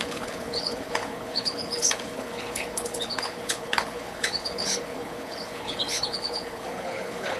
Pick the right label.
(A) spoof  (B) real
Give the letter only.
A